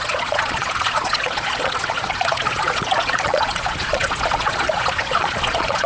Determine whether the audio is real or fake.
fake